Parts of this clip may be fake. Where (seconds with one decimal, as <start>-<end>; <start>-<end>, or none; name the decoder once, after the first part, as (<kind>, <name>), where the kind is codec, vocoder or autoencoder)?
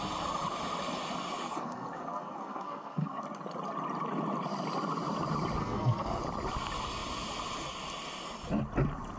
1.5-3.2 (codec, SNAC); 5.6-6.2